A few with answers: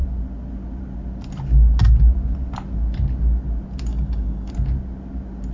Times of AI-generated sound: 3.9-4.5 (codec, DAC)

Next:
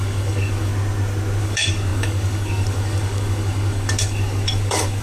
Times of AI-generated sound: 0.0-0.7 (codec, DAC); 1.4-5.0